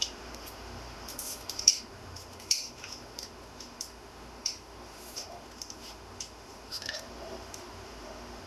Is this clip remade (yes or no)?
yes